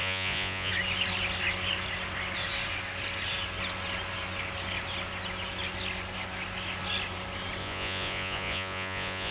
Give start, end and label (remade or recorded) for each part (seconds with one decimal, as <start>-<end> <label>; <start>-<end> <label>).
0.0-0.7 remade; 0.7-7.6 recorded; 7.6-9.3 remade